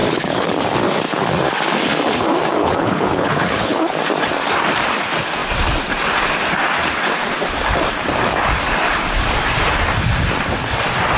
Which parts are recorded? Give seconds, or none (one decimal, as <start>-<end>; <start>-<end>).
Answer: 0.5-2.6; 3.8-11.2